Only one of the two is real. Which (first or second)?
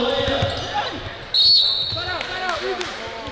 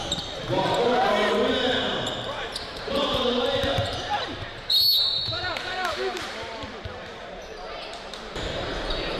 first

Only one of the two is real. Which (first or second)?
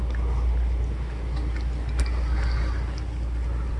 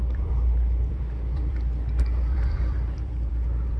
first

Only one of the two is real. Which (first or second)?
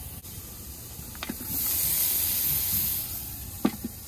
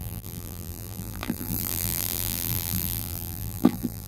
first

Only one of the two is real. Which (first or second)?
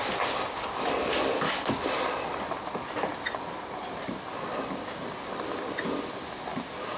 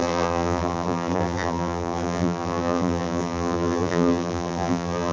first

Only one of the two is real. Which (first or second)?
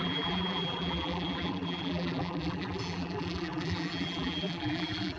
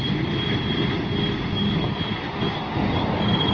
second